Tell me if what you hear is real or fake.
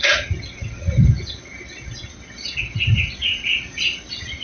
fake